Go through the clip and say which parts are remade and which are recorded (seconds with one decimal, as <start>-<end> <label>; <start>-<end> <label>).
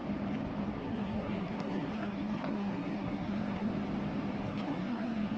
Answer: 0.0-0.7 recorded; 0.7-3.7 remade; 3.7-4.4 recorded; 4.4-5.4 remade